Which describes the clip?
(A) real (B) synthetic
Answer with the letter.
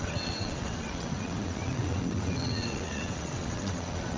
B